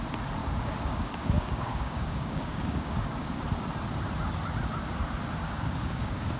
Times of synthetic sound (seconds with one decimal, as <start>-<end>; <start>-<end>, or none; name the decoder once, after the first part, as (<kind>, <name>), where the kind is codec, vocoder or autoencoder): 0.4-3.4 (codec, DAC); 5.4-6.4

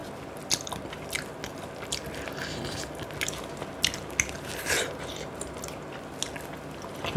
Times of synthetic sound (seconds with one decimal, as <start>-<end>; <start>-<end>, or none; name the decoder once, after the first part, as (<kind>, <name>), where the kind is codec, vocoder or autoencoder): none

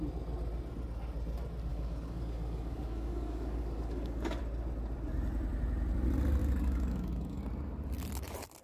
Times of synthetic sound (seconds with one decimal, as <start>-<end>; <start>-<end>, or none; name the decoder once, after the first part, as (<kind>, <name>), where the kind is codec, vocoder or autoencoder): 1.7-4.4 (codec, DAC); 6.4-7.4

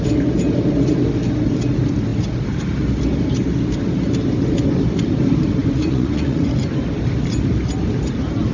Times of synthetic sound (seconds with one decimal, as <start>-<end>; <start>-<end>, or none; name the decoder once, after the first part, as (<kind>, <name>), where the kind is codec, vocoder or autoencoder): 5.6-6.5 (vocoder, Vocos)